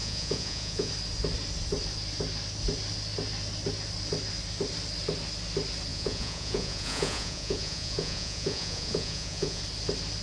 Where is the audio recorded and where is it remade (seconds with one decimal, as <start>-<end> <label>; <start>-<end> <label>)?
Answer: 0.0-0.9 remade; 0.9-5.9 recorded; 5.9-9.6 remade; 9.6-10.2 recorded